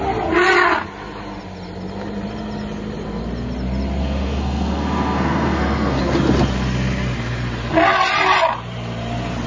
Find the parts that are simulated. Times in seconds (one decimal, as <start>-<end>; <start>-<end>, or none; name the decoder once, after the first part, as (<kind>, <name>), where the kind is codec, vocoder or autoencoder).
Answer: 4.0-6.0 (codec, SNAC)